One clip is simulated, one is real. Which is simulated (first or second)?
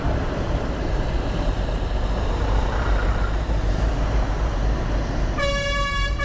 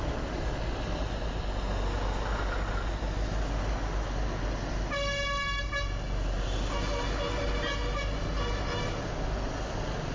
first